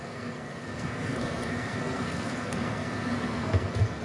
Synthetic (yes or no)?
yes